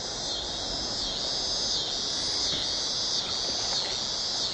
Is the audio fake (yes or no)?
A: no